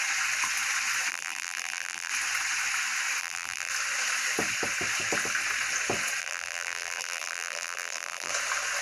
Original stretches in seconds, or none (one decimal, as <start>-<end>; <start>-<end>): 0.0-1.1; 2.1-3.2; 3.7-6.2; 8.3-8.8